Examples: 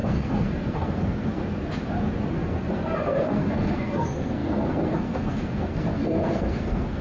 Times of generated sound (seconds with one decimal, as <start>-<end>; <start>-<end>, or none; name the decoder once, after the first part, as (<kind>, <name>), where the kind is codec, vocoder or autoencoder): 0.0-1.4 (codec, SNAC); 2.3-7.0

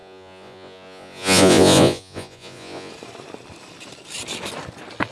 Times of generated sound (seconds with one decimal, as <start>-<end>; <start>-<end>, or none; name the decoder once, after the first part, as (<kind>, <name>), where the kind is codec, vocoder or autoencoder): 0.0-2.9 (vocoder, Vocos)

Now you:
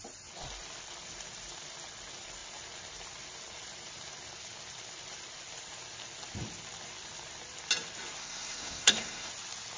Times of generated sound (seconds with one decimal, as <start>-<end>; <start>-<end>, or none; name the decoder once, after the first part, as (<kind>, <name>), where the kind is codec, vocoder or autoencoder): 8.2-9.3 (codec, SNAC)